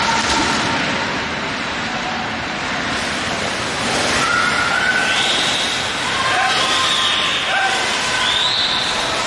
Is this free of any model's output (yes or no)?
no